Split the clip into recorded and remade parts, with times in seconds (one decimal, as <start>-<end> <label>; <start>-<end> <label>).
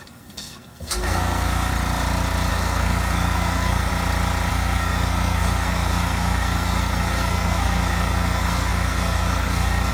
0.0-1.7 remade; 1.7-2.5 recorded; 2.5-3.9 remade; 3.9-4.5 recorded; 4.5-9.9 remade